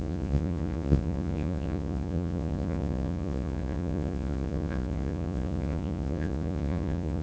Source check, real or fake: fake